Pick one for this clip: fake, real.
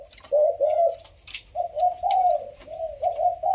real